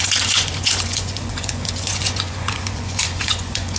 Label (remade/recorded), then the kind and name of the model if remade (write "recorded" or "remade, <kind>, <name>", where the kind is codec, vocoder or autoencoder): remade, vocoder, Vocos